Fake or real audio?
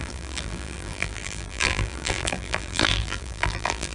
fake